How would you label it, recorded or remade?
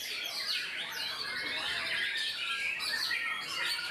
remade